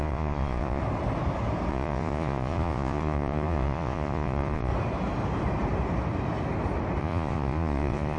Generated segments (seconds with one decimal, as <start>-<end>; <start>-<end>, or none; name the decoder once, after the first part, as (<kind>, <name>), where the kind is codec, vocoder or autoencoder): 0.0-0.8 (vocoder, Vocos); 1.7-4.7; 7.0-8.2